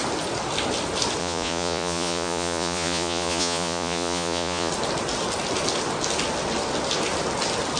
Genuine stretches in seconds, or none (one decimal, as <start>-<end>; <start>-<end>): 0.0-1.2; 4.7-7.8